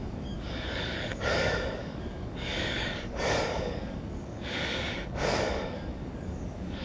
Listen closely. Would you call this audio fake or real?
fake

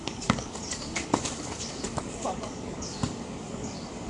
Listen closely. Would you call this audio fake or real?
fake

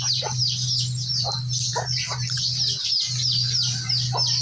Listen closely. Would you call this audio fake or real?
real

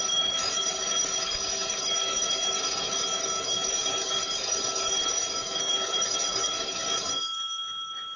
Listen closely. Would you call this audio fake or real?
fake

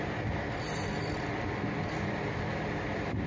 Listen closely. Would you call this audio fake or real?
real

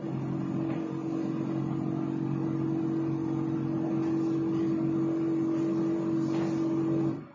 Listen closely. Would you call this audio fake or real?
real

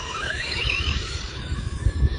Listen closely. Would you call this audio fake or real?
fake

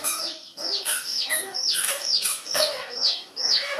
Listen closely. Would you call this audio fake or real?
fake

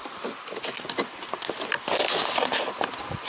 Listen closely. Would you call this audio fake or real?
real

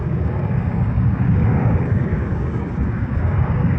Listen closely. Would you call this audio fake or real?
fake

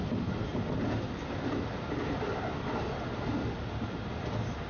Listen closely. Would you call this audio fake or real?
real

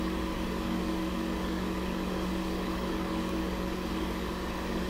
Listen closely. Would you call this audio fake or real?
fake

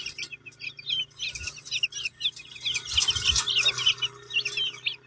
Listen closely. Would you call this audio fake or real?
real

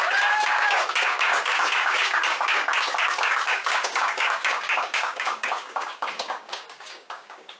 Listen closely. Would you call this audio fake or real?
fake